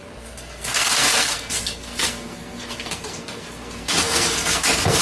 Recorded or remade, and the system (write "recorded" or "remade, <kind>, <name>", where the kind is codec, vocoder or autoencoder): remade, codec, SNAC